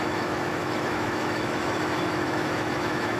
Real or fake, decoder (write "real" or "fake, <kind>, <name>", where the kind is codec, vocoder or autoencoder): fake, autoencoder, DAC-VAE